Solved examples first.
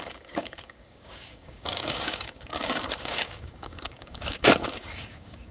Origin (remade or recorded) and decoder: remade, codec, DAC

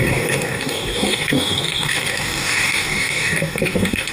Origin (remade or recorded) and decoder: remade, codec, DAC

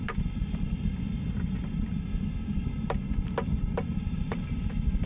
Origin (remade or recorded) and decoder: recorded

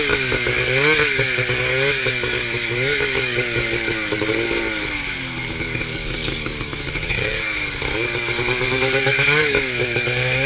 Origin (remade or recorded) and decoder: remade, codec, DAC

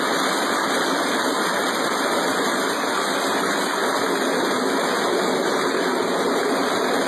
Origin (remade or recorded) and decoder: recorded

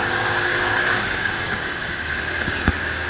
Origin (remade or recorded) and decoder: remade, codec, DAC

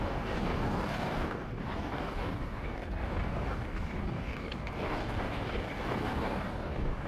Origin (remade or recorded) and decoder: remade, codec, DAC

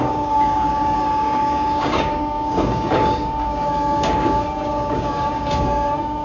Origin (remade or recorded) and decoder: remade, codec, DAC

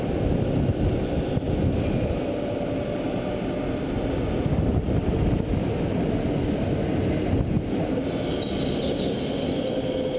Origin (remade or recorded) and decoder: recorded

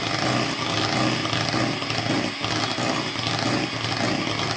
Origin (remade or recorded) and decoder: recorded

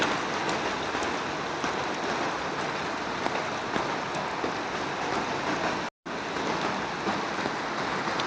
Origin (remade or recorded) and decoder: recorded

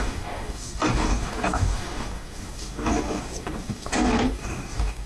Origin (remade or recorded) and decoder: remade, codec, DAC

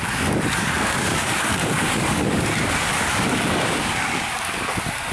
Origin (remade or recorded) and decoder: remade, codec, DAC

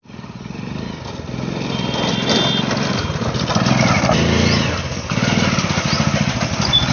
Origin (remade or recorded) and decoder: recorded